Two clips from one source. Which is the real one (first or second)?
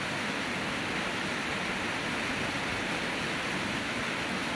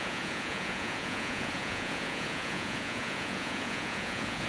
first